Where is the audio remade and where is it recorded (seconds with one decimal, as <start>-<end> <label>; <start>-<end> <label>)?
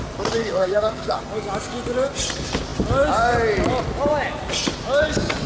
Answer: 0.0-0.4 recorded; 0.4-1.2 remade; 1.2-5.5 recorded